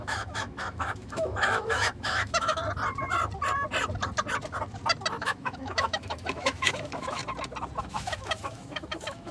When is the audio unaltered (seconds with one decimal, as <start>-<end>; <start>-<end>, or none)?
2.6-5.2; 7.2-7.8